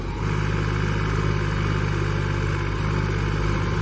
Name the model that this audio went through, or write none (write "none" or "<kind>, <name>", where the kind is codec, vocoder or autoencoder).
none